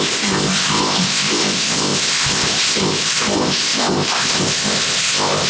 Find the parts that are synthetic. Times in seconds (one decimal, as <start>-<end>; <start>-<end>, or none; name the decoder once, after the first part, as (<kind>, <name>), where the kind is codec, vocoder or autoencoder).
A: 0.0-5.5 (codec, ZipCodec)